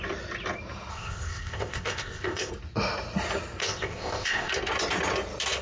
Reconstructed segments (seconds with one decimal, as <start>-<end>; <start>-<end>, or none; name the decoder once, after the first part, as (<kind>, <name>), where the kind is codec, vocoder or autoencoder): 0.9-2.5 (codec, ZipCodec); 3.6-4.5